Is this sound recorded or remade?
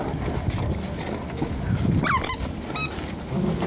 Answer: recorded